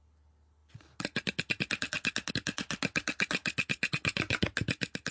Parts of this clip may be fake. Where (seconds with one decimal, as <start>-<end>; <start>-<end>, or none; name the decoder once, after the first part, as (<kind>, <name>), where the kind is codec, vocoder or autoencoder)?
none